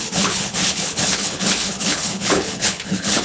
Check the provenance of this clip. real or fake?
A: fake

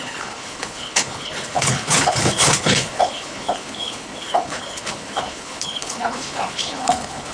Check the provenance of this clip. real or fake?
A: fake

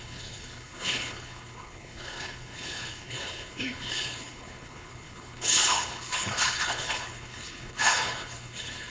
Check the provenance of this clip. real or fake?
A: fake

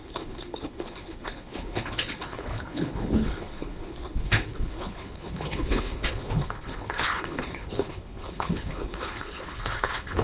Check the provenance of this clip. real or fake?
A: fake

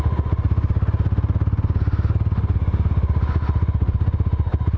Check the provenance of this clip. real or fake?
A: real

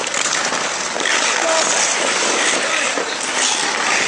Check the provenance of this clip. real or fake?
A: real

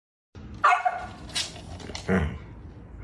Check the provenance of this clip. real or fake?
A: real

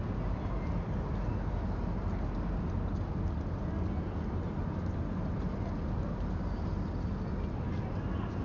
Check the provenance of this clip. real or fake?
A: real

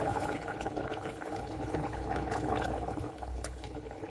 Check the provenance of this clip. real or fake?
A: fake